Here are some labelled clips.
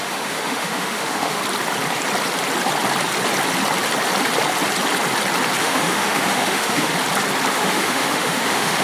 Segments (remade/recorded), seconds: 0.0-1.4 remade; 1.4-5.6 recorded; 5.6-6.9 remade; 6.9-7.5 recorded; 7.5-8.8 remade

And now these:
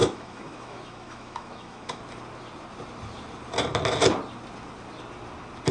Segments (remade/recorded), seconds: 0.0-2.0 remade; 2.0-5.7 recorded

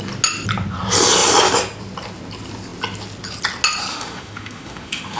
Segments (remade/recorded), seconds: 0.0-3.9 recorded; 3.9-5.2 remade

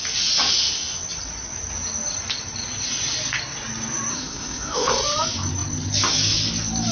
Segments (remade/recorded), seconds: 0.0-4.1 recorded; 4.1-4.9 remade; 4.9-6.9 recorded

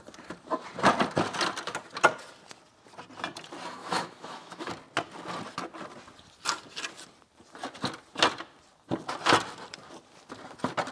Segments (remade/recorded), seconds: 0.0-3.8 recorded; 3.8-4.7 remade; 4.7-10.9 recorded

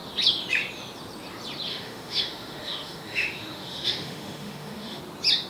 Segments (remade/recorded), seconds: 0.0-1.7 recorded; 1.7-5.0 remade; 5.0-5.5 recorded

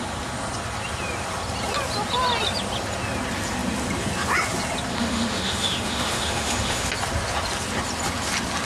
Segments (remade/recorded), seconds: 0.0-4.9 recorded; 4.9-6.9 remade; 6.9-8.7 recorded

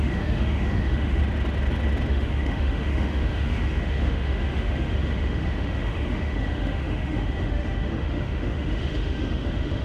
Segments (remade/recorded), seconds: 0.0-1.2 remade; 1.2-2.1 recorded; 2.1-9.8 remade